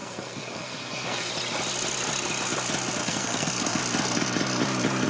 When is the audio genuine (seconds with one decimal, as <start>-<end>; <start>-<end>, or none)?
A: 1.3-3.0; 3.8-5.1